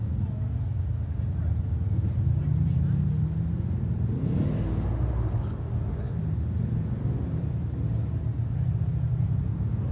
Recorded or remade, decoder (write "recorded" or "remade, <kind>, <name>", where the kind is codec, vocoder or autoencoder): recorded